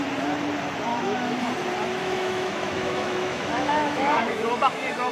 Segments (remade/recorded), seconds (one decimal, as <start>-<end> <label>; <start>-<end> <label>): 0.0-0.9 recorded; 0.9-1.4 remade; 1.4-2.0 recorded; 2.0-5.1 remade